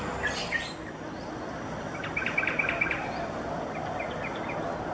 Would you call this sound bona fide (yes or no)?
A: yes